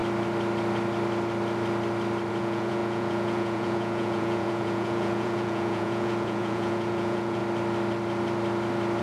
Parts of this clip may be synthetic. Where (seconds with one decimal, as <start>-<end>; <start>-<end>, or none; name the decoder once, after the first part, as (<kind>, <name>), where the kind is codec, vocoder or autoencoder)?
2.3-7.4 (vocoder, Vocos)